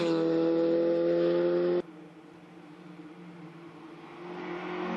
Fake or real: real